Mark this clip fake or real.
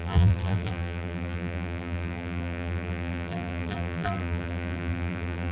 fake